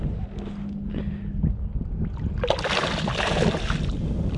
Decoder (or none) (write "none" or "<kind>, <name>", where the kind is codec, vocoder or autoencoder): none